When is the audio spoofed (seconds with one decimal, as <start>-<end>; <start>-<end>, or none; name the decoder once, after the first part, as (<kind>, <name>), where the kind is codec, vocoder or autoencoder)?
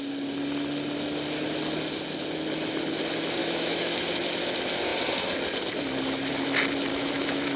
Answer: 3.4-4.0 (autoencoder, DAC-VAE); 6.9-7.6